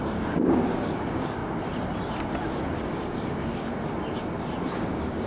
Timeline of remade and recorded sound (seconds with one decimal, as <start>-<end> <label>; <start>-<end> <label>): 0.0-1.4 remade; 1.4-2.8 recorded; 2.8-3.7 remade; 3.7-4.8 recorded; 4.8-5.3 remade